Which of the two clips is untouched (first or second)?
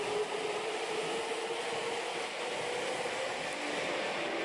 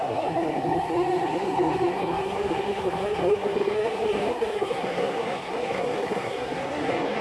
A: first